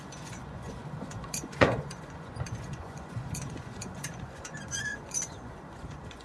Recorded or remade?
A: remade